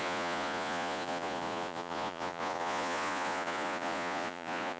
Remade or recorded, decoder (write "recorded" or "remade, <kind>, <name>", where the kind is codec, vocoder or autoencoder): remade, vocoder, Vocos